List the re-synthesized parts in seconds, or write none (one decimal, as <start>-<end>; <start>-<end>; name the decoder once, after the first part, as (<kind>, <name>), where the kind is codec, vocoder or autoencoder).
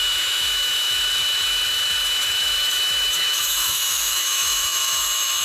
0.0-5.4 (autoencoder, DAC-VAE)